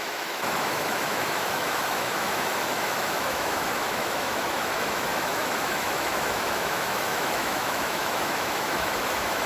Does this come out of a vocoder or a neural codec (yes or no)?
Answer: yes